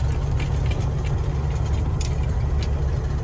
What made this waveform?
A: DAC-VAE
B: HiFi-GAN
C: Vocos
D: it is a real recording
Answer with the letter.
D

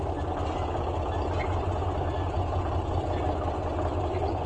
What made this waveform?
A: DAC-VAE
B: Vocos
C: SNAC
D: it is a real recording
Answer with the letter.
D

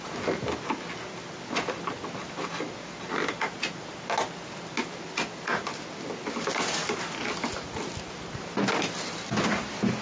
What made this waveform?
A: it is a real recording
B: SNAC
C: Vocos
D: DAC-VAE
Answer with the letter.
A